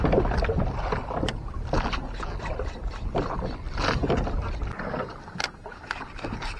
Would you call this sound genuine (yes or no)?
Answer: yes